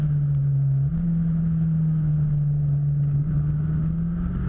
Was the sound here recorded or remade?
recorded